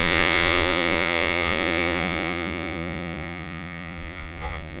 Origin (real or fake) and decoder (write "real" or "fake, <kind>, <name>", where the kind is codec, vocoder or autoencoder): fake, vocoder, Vocos